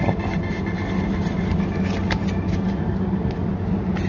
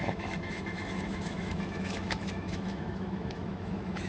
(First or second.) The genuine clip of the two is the first